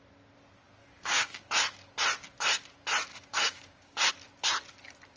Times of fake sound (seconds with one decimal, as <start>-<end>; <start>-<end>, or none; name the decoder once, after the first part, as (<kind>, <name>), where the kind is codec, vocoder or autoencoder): 0.8-1.5 (codec, DAC); 3.1-4.1